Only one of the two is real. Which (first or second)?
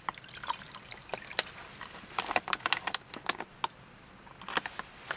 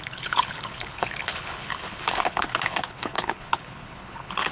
first